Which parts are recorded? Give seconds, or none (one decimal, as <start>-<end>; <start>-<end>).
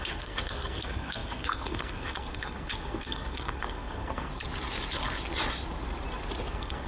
4.3-6.5